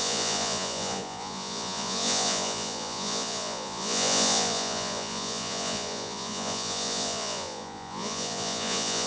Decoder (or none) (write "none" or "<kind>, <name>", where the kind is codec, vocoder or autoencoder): vocoder, Vocos